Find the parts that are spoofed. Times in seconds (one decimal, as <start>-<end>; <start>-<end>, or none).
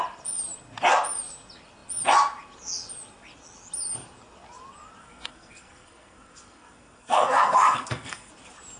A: 5.0-8.3